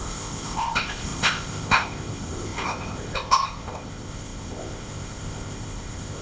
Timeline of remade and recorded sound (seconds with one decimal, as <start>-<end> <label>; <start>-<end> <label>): 0.0-6.2 remade